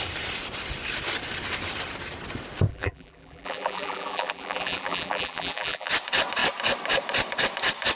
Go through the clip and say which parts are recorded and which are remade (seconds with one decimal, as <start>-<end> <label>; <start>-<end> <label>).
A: 0.0-2.7 recorded; 2.7-5.9 remade; 5.9-8.0 recorded